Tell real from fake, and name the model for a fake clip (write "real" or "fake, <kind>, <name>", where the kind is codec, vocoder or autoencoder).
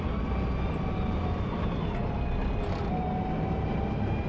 real